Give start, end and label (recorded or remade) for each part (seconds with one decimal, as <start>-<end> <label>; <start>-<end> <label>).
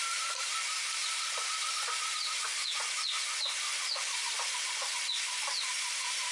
0.0-1.0 recorded; 1.0-2.4 remade; 2.4-6.3 recorded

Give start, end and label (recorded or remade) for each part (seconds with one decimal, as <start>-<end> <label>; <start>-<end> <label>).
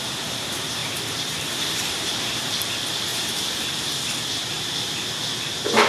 0.0-0.8 recorded; 0.8-2.7 remade; 2.7-3.1 recorded; 3.1-4.3 remade; 4.3-5.9 recorded